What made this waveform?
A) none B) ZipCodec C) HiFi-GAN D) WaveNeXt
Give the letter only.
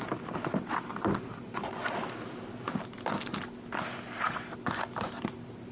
A